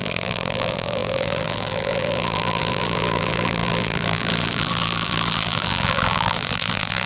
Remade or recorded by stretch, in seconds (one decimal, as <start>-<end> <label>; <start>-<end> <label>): 0.0-7.1 remade